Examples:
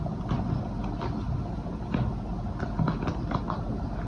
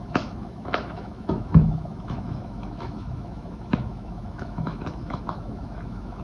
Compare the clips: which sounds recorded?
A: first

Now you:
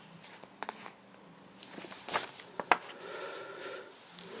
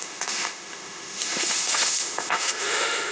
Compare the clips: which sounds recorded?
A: first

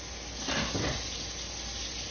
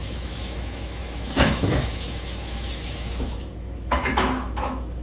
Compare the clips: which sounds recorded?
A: first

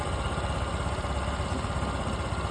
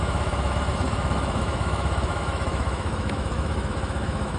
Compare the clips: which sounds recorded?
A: first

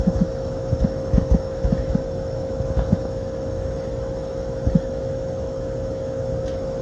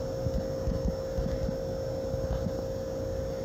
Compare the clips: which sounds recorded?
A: second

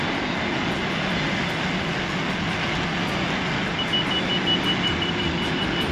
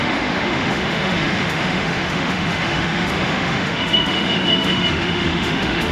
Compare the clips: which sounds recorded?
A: first